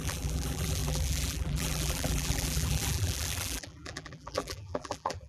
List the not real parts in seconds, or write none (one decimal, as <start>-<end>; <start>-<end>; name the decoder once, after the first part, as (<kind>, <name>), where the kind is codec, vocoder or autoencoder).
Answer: 0.0-5.3 (vocoder, BigVGAN v2)